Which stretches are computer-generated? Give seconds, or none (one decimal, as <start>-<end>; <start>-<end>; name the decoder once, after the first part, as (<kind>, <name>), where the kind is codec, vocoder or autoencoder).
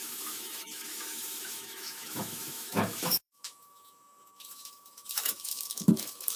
0.0-6.4 (autoencoder, DAC-VAE)